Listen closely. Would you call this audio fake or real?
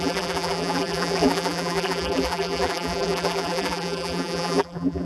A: fake